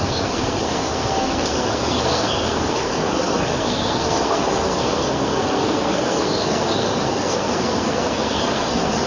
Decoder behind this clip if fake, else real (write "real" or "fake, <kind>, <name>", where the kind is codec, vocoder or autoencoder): fake, codec, SNAC